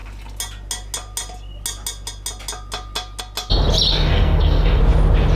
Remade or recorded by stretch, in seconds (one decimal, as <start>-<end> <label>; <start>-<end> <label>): 0.0-3.9 recorded; 3.9-4.8 remade; 4.8-5.4 recorded